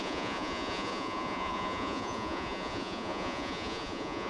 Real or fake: fake